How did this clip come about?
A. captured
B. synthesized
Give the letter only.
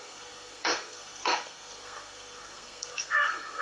B